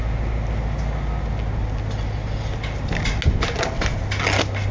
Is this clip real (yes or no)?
yes